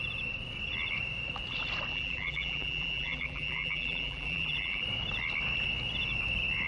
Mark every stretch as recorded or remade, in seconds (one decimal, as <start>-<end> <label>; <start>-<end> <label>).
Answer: 0.0-1.9 recorded; 1.9-4.8 remade; 4.8-6.7 recorded